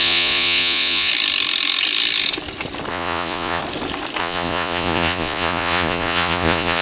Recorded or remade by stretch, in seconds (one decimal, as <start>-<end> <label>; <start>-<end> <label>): 0.0-1.1 remade; 1.1-2.9 recorded; 2.9-3.6 remade; 3.6-4.2 recorded; 4.2-6.8 remade